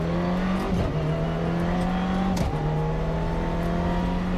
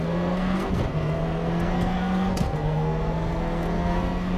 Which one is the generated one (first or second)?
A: second